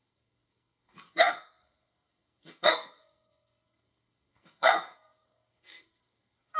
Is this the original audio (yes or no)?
no